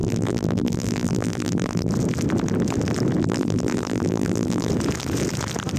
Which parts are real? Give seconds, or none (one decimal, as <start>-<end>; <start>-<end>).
1.9-3.2; 4.7-5.8